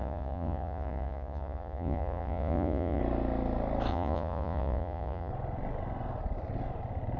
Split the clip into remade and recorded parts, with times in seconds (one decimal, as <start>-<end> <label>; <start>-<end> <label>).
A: 0.0-3.0 remade; 3.0-3.9 recorded; 3.9-5.3 remade; 5.3-7.2 recorded